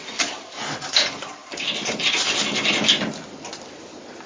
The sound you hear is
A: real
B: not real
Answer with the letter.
A